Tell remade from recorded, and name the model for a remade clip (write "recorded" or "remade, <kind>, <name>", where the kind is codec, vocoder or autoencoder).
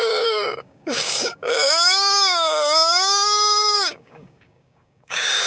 remade, codec, DAC